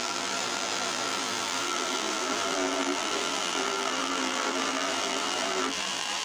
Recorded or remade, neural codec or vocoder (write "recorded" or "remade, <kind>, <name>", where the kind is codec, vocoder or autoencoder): remade, vocoder, BigVGAN v2